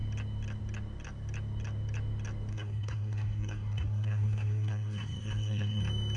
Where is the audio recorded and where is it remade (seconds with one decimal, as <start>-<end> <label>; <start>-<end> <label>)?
0.0-2.5 recorded; 2.5-5.8 remade; 5.8-6.2 recorded

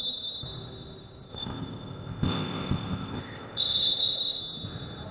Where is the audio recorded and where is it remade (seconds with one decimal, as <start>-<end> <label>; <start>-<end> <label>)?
0.0-1.3 recorded; 1.3-4.4 remade; 4.4-5.1 recorded

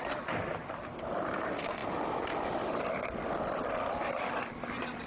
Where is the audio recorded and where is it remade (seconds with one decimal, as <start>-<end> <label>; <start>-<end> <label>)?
0.0-5.1 recorded

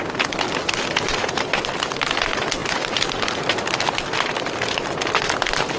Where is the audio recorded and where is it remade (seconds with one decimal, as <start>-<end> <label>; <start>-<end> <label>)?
0.0-5.8 recorded

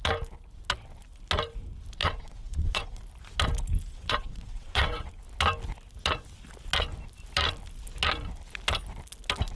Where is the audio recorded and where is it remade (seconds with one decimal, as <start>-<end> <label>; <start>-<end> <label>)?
0.0-2.0 recorded; 2.0-3.0 remade; 3.0-3.9 recorded; 3.9-5.1 remade; 5.1-9.6 recorded

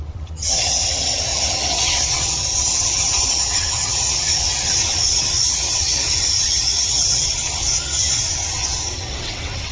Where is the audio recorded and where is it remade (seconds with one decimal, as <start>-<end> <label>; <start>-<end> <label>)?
0.0-9.7 remade

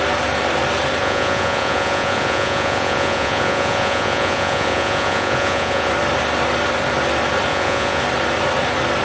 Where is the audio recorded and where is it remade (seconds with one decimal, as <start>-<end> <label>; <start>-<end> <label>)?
0.0-1.0 recorded; 1.0-5.9 remade; 5.9-7.5 recorded; 7.5-8.0 remade; 8.0-9.0 recorded